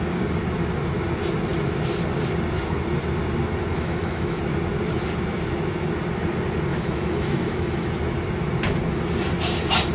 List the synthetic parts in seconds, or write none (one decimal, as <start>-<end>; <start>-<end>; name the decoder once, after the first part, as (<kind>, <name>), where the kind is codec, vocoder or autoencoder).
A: 3.7-4.4 (autoencoder, DAC-VAE); 6.7-7.9